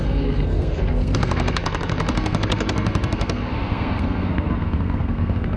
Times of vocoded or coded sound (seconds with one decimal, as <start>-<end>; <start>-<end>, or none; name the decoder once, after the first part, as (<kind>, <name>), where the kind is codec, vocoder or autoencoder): 0.0-5.6 (codec, SNAC)